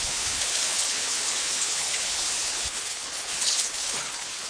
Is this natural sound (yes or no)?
no